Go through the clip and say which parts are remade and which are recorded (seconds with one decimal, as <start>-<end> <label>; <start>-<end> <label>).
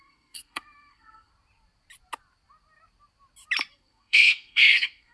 0.0-1.3 remade; 1.3-3.7 recorded; 3.7-5.1 remade